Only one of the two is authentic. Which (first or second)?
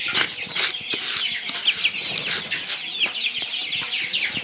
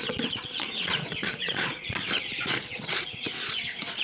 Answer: first